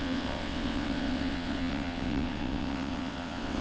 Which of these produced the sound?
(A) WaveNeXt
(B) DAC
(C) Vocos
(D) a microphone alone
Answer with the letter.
A